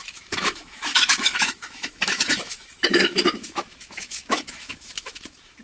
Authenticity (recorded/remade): remade